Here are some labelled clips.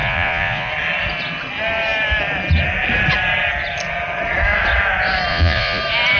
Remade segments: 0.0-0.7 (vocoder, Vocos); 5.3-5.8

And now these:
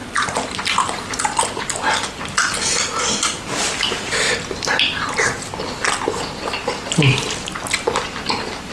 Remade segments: none

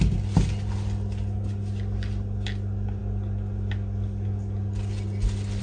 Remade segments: none

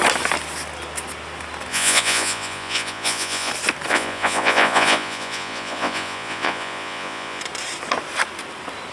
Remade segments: 1.7-3.5 (vocoder, Vocos); 3.9-7.4

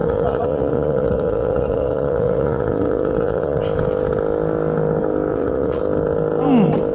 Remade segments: 0.0-3.6 (vocoder, Vocos); 5.3-5.8

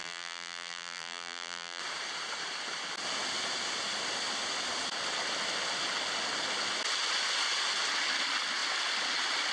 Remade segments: 0.0-1.8 (vocoder, BigVGAN v2)

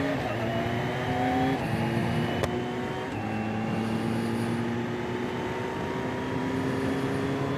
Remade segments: none

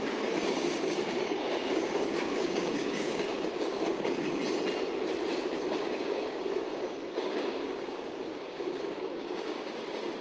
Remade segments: 0.0-4.4 (codec, DAC); 5.6-10.2